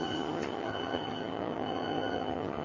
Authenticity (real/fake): fake